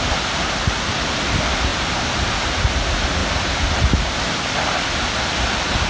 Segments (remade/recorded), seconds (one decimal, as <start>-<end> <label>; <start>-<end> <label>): 0.0-5.9 recorded